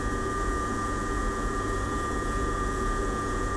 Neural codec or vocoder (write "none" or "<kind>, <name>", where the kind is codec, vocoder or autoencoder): vocoder, Vocos